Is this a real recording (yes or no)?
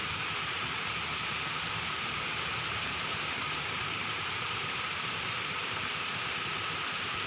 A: no